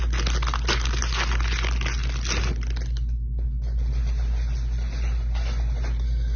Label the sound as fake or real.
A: real